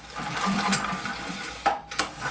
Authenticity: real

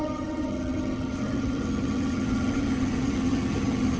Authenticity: fake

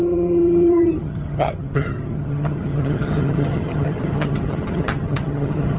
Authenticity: fake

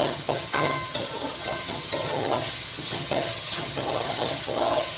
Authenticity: fake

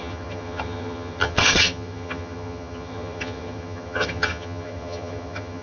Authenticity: fake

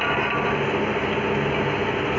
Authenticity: real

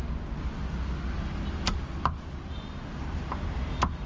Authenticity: real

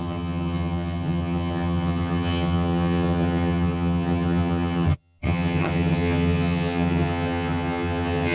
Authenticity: fake